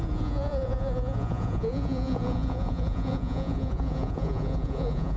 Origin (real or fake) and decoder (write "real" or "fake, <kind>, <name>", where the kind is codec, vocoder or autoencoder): fake, vocoder, Vocos